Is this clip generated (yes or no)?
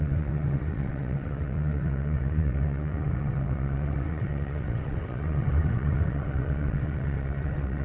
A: yes